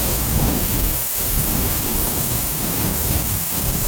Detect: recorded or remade remade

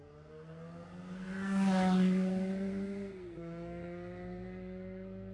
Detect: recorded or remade remade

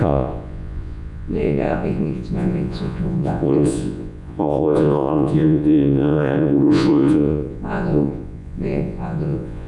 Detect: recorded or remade remade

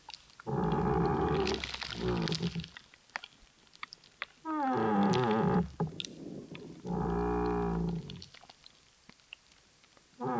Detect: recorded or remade recorded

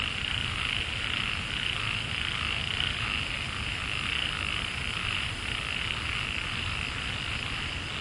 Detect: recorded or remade recorded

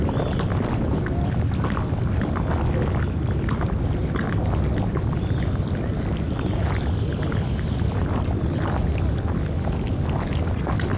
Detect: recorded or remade recorded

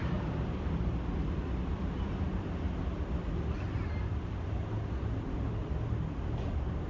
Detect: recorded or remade recorded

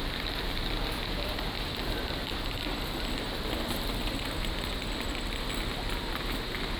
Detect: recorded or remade recorded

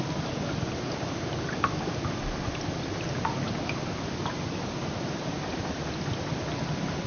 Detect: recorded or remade recorded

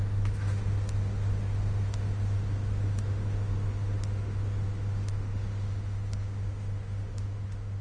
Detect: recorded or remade remade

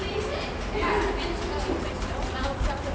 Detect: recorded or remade recorded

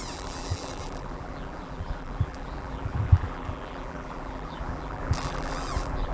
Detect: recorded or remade remade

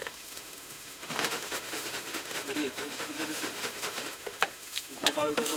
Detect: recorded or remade remade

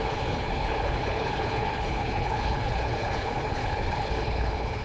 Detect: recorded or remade remade